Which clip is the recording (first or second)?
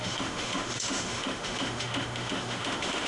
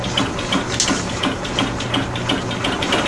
second